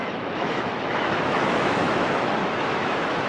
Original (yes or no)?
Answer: no